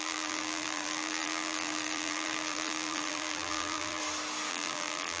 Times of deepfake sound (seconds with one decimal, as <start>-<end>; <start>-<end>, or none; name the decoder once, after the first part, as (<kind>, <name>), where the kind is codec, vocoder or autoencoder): 0.0-4.0 (vocoder, BigVGAN v2); 4.5-5.2